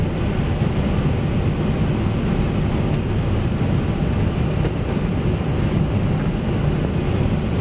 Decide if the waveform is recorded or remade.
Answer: recorded